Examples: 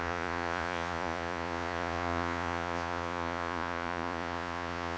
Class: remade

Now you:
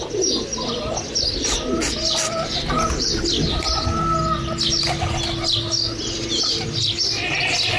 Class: recorded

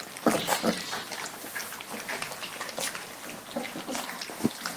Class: recorded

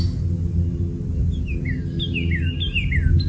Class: recorded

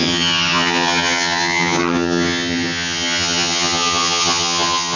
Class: remade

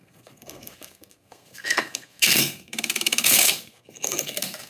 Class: remade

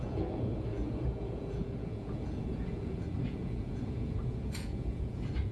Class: remade